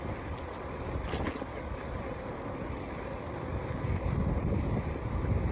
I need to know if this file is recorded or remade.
recorded